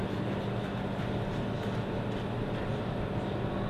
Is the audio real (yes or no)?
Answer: yes